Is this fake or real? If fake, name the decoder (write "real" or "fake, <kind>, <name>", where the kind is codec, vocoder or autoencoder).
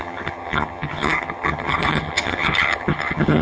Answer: fake, vocoder, HiFi-GAN